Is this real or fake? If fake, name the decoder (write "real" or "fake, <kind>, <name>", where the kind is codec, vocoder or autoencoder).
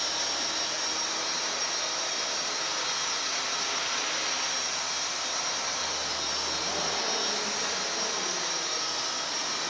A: real